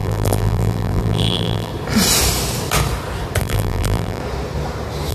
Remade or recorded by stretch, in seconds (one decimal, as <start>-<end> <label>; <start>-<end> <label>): 0.0-1.7 remade; 1.7-3.4 recorded; 3.4-4.2 remade; 4.2-5.1 recorded